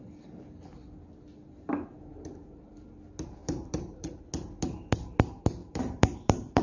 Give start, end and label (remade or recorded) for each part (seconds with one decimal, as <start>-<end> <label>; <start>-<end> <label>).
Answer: 0.0-2.1 recorded; 2.1-2.7 remade; 2.7-3.4 recorded; 3.4-4.2 remade; 4.2-5.6 recorded; 5.6-6.6 remade